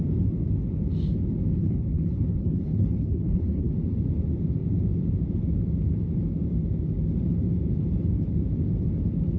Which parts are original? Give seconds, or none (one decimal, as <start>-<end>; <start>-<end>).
0.0-1.6; 3.7-9.4